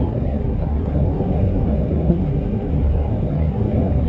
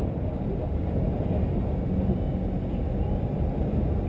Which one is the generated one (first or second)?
first